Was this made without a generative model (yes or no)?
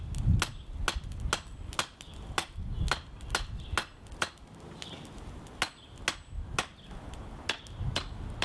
yes